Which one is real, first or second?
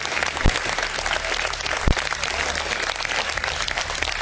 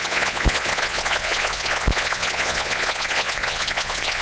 first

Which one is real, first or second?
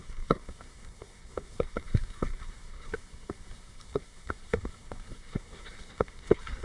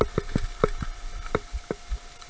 second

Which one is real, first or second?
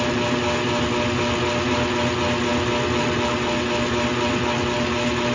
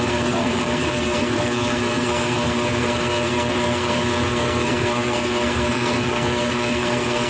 first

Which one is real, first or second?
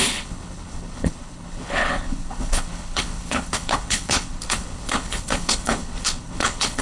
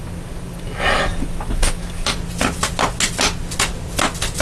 second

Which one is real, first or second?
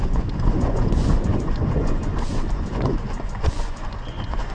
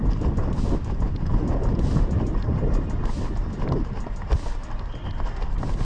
second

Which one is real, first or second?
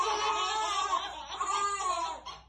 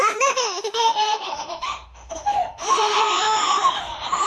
first